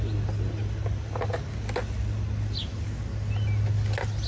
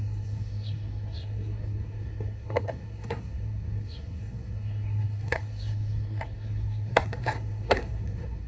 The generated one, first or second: second